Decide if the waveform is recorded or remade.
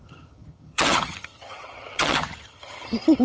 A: remade